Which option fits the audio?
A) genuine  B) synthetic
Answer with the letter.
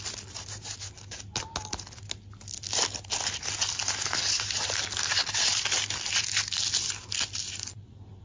A